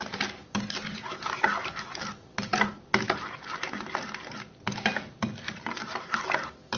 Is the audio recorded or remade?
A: recorded